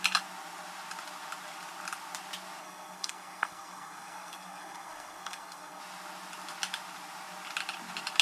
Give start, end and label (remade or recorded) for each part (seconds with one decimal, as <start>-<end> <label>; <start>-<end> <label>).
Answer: 0.0-2.6 recorded; 2.6-5.8 remade; 5.8-8.2 recorded